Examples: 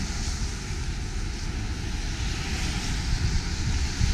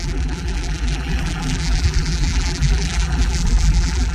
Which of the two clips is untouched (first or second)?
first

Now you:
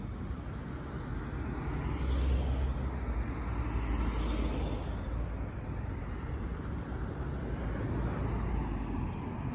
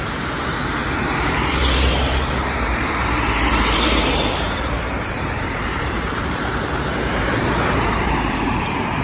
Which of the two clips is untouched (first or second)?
first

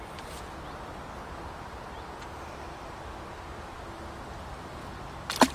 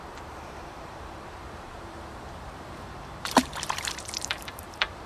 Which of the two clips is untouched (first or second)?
first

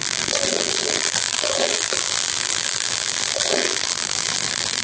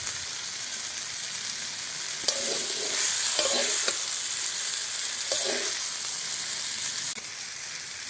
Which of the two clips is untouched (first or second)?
second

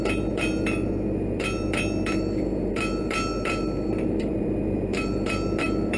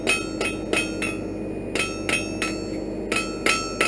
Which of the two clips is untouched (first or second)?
second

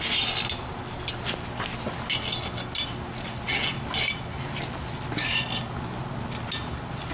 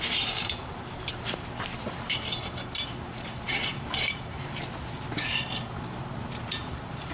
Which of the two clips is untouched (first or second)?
first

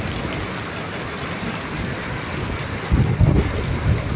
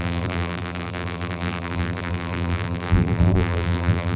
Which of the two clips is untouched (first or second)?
first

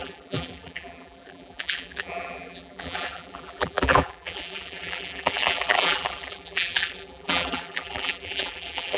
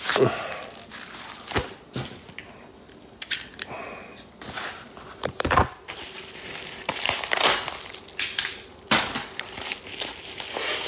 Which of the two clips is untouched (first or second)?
second